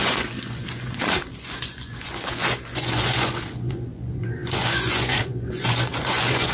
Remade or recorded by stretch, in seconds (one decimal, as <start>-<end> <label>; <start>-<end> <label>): 0.0-6.5 remade